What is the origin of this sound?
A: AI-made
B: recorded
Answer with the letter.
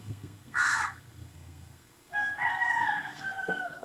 A